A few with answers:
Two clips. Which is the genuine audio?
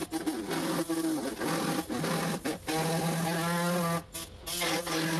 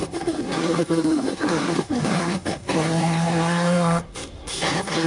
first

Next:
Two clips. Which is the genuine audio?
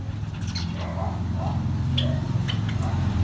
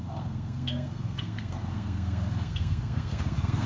first